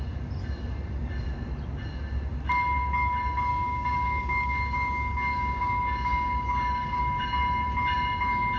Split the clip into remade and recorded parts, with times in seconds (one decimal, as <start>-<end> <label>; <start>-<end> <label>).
0.0-3.5 recorded; 3.5-7.0 remade; 7.0-8.6 recorded